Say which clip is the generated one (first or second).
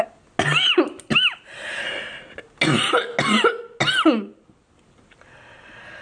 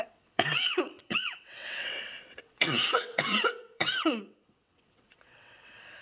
second